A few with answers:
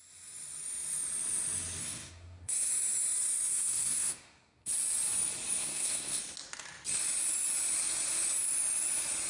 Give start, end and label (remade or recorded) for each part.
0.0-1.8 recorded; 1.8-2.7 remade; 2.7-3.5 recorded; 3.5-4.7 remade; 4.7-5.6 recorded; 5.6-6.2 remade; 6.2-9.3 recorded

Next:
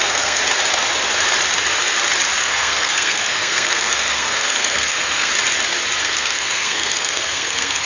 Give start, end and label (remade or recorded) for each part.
0.0-0.4 remade; 0.4-2.4 recorded; 2.4-5.3 remade; 5.3-6.0 recorded; 6.0-7.9 remade

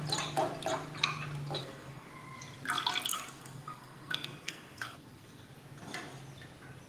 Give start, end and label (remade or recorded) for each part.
0.0-1.6 recorded; 1.6-2.1 remade; 2.1-3.1 recorded; 3.1-5.5 remade; 5.5-6.9 recorded

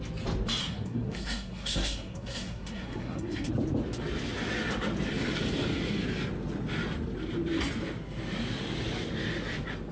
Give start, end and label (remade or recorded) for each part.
0.0-0.6 recorded; 0.6-3.5 remade; 3.5-9.9 recorded

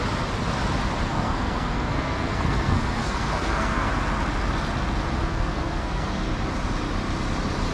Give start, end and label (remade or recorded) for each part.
0.0-1.1 recorded; 1.1-3.9 remade; 3.9-5.2 recorded; 5.2-6.3 remade; 6.3-7.7 recorded